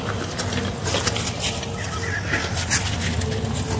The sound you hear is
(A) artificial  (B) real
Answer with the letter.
B